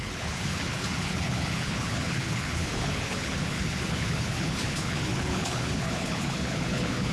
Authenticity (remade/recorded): remade